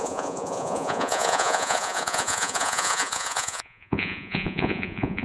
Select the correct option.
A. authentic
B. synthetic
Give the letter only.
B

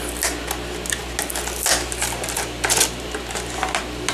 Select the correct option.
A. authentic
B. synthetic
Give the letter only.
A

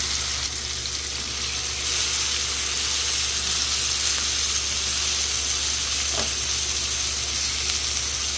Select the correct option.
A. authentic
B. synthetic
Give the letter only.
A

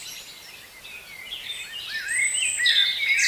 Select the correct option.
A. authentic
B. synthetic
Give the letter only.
A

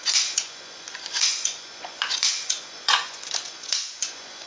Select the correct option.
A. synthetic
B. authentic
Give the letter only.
A